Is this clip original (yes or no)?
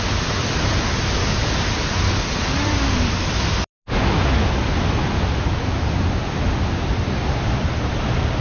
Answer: yes